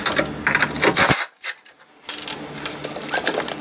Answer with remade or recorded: recorded